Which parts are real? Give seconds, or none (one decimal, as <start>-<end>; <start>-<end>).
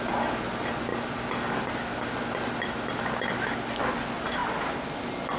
0.0-5.4